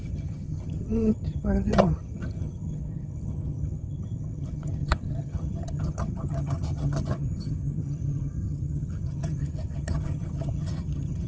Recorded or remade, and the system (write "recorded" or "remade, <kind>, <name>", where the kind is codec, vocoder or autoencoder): remade, vocoder, HiFi-GAN